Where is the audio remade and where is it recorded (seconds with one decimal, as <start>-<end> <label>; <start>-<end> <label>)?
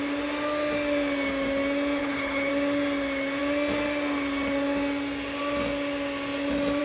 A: 0.0-2.0 recorded; 2.0-2.5 remade; 2.5-6.8 recorded